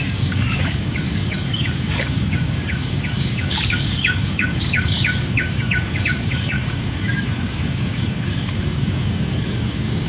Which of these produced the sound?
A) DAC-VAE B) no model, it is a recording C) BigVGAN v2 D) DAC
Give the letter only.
D